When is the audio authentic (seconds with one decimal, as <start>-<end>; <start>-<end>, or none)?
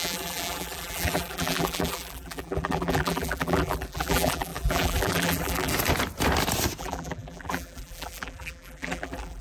5.7-6.8